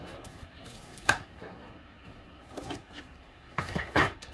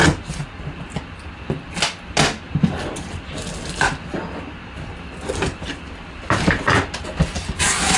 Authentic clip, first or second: second